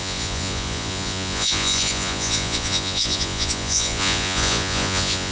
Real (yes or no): no